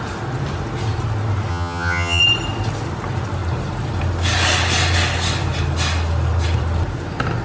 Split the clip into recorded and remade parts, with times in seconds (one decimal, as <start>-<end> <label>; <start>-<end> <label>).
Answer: 0.0-1.5 recorded; 1.5-2.2 remade; 2.2-7.4 recorded